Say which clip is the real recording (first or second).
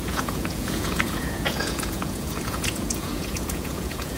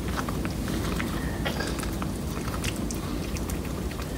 second